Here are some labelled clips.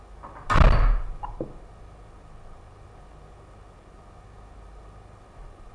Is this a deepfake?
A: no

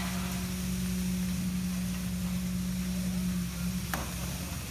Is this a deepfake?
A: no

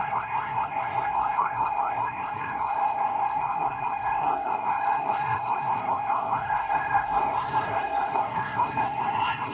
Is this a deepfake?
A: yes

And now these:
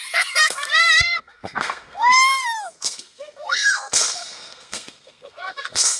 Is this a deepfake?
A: yes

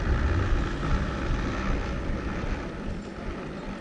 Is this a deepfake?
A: no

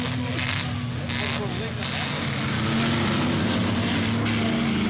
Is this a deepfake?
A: no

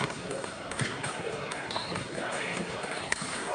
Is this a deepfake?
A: yes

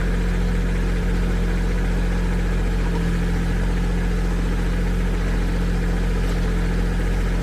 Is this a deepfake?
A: no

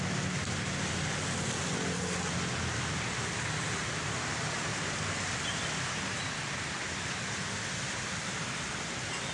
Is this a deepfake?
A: no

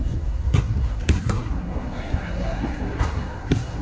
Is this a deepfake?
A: yes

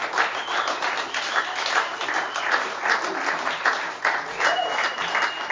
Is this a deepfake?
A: no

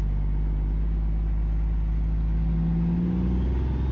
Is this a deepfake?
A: no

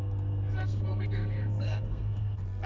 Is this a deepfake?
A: yes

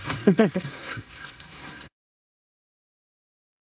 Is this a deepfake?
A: yes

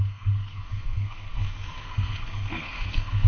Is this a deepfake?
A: yes